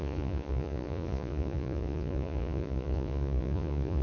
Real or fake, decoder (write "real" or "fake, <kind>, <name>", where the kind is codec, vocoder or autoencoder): fake, vocoder, Vocos